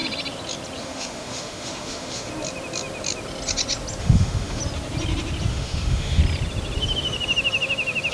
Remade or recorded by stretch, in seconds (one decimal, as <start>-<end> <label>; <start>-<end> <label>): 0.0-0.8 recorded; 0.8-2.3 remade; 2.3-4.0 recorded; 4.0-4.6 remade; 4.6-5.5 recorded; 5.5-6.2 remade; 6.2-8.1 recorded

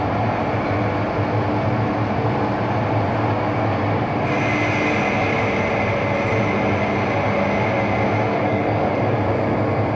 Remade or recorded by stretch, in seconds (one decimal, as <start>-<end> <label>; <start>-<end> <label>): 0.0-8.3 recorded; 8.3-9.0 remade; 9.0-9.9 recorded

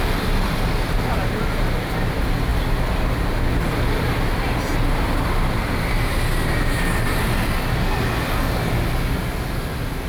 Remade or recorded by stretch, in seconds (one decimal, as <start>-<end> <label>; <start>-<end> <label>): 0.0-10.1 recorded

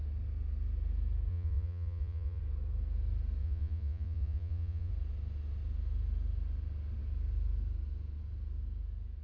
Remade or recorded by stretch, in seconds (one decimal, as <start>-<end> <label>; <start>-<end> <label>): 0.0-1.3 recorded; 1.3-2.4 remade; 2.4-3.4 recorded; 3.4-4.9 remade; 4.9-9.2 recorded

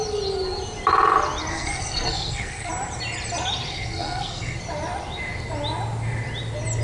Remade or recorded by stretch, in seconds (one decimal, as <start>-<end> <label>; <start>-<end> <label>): 0.0-1.5 recorded; 1.5-2.7 remade; 2.7-3.7 recorded; 3.7-4.6 remade; 4.6-6.8 recorded